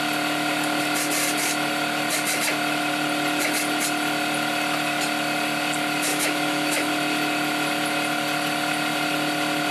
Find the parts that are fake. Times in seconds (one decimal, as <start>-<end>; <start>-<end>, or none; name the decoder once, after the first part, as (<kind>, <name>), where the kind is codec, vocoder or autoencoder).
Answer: 6.1-6.9 (autoencoder, DAC-VAE)